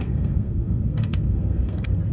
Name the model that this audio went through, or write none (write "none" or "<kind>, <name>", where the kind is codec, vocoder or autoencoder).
codec, SNAC